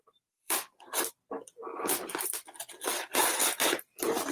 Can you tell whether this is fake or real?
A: fake